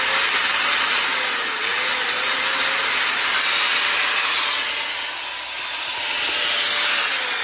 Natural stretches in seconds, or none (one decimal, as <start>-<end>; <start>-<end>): 0.0-7.4